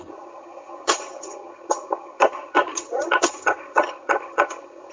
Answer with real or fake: fake